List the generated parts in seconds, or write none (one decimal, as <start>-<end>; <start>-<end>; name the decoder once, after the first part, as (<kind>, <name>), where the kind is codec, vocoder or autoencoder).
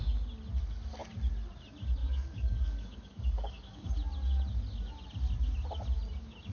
2.0-3.9 (codec, DAC)